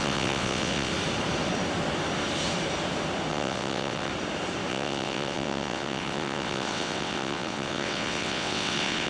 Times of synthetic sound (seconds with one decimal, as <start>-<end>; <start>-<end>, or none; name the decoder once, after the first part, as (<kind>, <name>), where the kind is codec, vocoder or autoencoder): 0.0-0.9 (vocoder, WaveNeXt); 3.3-4.1; 4.7-9.1